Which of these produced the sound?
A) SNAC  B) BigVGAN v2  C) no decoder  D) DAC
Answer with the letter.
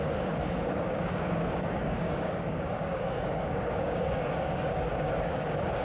D